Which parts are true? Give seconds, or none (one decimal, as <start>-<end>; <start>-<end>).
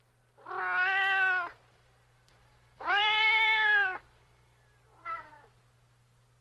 0.0-1.5; 5.3-6.4